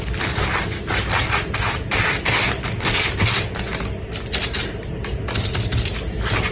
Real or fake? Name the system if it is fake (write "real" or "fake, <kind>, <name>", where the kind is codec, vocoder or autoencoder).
real